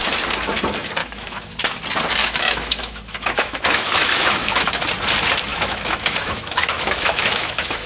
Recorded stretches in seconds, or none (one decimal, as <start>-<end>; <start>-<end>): 0.0-1.0; 1.5-2.2; 4.7-5.5